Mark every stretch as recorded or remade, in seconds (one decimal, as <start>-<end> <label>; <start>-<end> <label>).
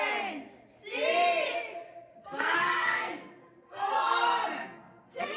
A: 0.0-2.2 recorded; 2.2-5.4 remade